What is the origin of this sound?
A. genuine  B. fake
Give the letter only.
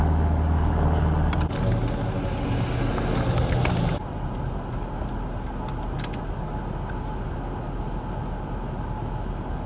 A